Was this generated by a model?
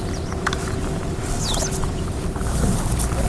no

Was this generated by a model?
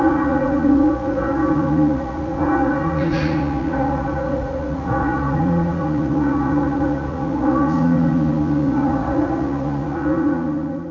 yes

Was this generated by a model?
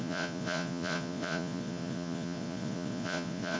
yes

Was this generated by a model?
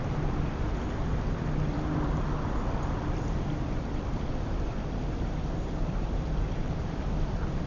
yes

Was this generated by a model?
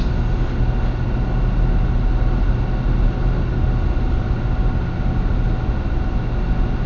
no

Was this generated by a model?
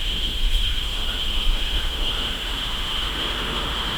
yes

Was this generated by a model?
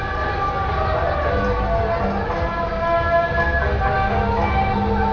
no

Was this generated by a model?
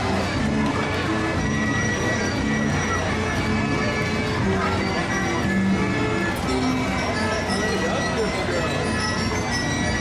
no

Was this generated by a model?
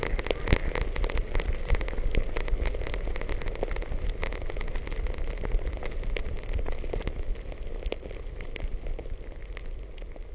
no